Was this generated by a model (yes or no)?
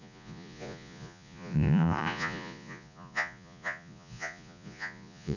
yes